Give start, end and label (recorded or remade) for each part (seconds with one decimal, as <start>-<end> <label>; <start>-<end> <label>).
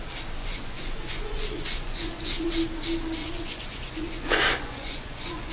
0.0-0.4 recorded; 0.4-2.5 remade; 2.5-3.2 recorded; 3.2-5.5 remade